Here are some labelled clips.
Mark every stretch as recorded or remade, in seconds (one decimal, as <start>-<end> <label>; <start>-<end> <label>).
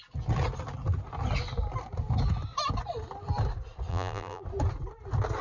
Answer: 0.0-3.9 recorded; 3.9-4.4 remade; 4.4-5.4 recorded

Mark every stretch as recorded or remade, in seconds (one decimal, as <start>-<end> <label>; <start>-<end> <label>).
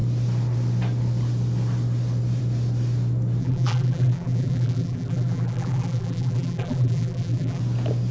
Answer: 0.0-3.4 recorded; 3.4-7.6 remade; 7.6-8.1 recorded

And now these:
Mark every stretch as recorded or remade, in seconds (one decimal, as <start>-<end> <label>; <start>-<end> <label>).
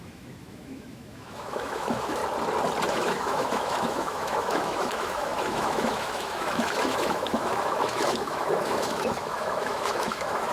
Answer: 0.0-2.2 remade; 2.2-2.9 recorded; 2.9-10.5 remade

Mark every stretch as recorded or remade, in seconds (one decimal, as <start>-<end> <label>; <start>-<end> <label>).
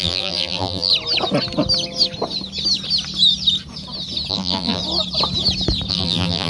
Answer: 0.0-0.9 remade; 0.9-4.3 recorded; 4.3-4.8 remade; 4.8-5.9 recorded; 5.9-6.5 remade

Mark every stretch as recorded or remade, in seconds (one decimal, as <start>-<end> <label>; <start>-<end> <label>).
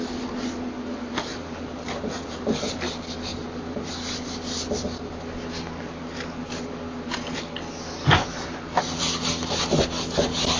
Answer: 0.0-1.3 recorded; 1.3-2.8 remade; 2.8-3.3 recorded; 3.3-3.9 remade; 3.9-8.2 recorded; 8.2-8.8 remade; 8.8-10.6 recorded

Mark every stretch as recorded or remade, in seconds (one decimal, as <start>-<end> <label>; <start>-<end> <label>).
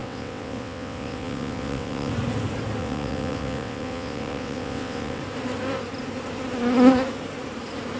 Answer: 0.0-2.1 remade; 2.1-2.8 recorded; 2.8-5.2 remade; 5.2-8.0 recorded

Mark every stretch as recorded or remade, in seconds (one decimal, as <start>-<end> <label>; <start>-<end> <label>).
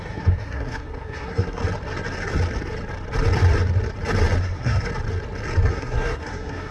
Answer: 0.0-1.6 remade; 1.6-4.4 recorded; 4.4-4.9 remade; 4.9-5.7 recorded; 5.7-6.7 remade